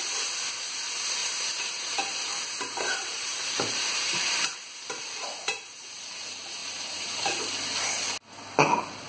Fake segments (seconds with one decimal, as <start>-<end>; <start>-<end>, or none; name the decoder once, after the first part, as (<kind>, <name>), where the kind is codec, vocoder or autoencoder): 1.2-5.9 (vocoder, BigVGAN v2); 6.6-7.4